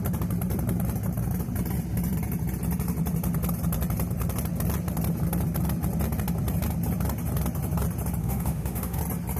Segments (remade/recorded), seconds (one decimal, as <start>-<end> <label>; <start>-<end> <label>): 0.0-8.2 recorded; 8.2-9.0 remade; 9.0-9.4 recorded